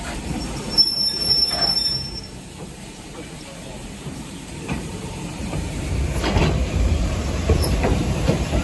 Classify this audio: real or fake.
fake